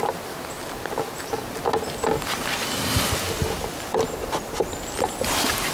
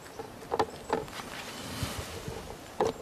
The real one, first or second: first